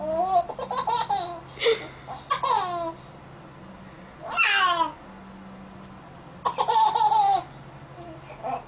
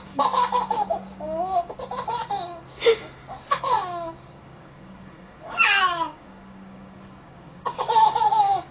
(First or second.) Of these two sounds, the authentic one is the first